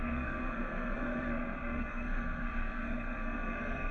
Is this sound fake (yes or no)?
yes